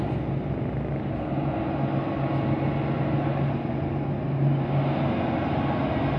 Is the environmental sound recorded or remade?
recorded